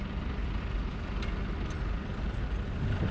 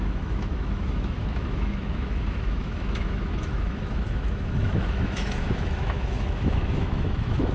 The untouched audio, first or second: first